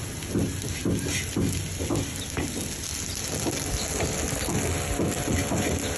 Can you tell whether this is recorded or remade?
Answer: recorded